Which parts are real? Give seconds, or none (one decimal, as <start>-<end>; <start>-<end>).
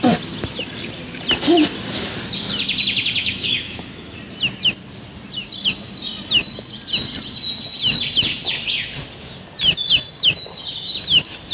0.0-3.2; 4.1-11.5